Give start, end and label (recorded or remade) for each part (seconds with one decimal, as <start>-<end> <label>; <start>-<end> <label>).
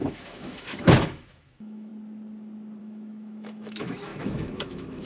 0.0-1.9 remade; 1.9-2.8 recorded; 2.8-5.1 remade